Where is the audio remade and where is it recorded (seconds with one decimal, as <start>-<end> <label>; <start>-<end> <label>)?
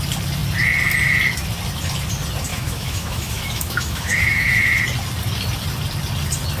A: 0.0-2.5 recorded; 2.5-4.8 remade; 4.8-6.6 recorded